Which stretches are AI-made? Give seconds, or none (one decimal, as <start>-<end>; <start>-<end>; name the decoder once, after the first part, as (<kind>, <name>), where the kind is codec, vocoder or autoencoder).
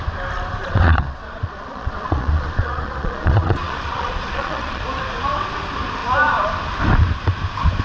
0.6-4.8 (vocoder, Vocos)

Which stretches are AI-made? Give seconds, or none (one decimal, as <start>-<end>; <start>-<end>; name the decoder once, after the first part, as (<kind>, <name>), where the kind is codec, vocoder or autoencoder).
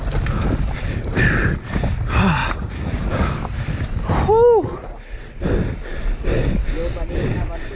2.4-3.1 (vocoder, Vocos)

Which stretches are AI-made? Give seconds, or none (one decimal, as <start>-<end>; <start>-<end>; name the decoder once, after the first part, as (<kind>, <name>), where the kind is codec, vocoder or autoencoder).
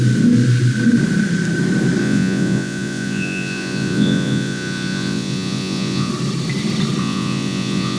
2.0-6.1 (vocoder, Vocos); 7.0-8.0